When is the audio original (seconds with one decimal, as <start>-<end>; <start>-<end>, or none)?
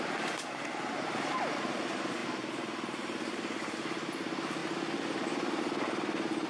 0.0-6.5